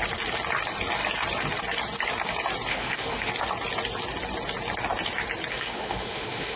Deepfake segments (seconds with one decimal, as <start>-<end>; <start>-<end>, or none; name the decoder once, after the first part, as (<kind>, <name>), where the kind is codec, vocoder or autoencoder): 2.7-3.3 (autoencoder, DAC-VAE); 5.5-6.6